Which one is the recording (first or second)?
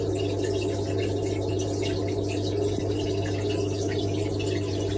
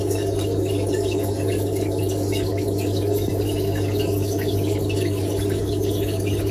first